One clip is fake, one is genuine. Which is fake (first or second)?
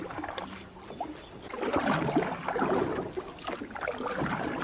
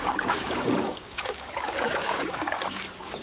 second